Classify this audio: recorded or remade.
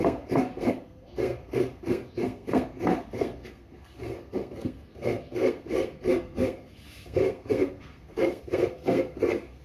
remade